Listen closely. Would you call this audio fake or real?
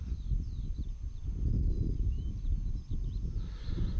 real